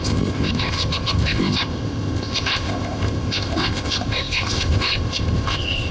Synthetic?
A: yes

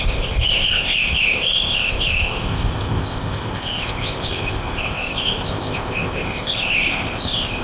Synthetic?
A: yes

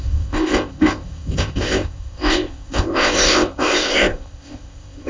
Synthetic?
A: yes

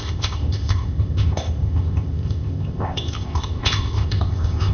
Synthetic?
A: yes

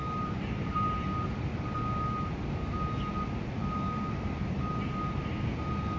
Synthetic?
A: no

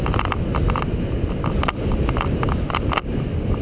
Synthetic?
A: no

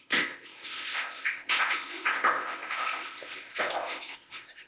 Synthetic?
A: yes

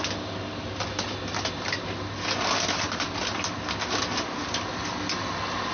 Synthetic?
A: no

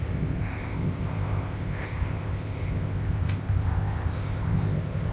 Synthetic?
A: yes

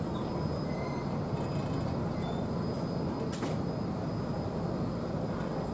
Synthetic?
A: no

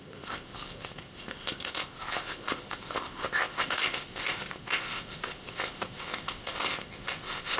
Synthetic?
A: yes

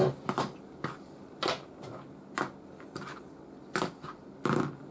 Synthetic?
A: no